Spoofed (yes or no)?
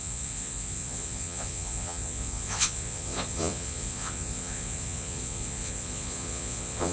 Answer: yes